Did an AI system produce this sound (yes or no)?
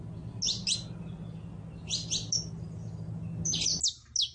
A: no